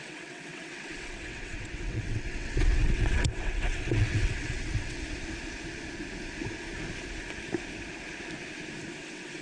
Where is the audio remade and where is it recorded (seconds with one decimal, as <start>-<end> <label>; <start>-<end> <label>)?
0.0-5.0 remade; 5.0-9.0 recorded; 9.0-9.4 remade